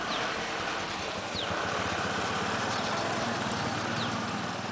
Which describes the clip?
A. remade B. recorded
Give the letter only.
B